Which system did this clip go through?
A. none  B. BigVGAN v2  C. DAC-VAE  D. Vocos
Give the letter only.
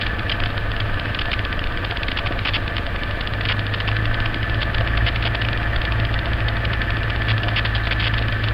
A